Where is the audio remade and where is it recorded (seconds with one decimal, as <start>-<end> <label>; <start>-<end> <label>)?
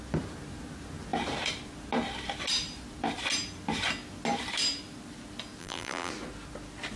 0.0-5.6 recorded; 5.6-6.1 remade; 6.1-7.0 recorded